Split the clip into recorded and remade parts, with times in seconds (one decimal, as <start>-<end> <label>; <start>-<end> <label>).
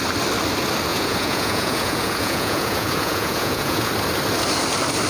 0.0-0.9 recorded; 0.9-3.9 remade; 3.9-5.1 recorded